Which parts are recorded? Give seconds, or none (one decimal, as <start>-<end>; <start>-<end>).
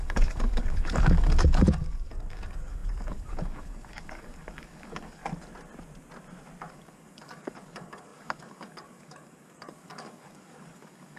5.2-6.7